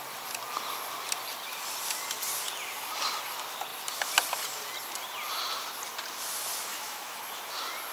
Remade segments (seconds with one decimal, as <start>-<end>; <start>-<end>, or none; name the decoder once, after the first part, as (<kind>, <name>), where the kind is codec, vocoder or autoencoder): 6.7-7.2 (autoencoder, DAC-VAE)